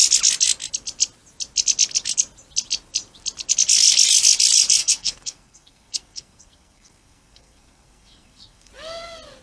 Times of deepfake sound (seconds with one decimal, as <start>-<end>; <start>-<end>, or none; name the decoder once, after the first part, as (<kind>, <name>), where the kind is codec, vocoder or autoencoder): 4.8-8.7 (codec, SNAC)